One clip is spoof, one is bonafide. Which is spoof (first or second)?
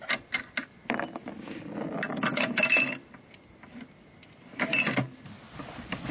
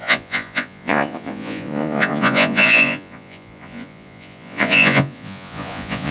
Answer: second